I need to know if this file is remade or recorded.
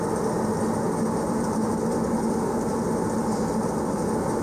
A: recorded